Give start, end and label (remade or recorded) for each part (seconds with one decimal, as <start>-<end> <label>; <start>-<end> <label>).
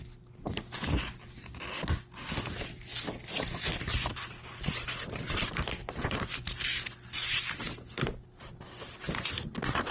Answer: 0.0-3.3 recorded; 3.3-5.4 remade; 5.4-7.7 recorded; 7.7-9.9 remade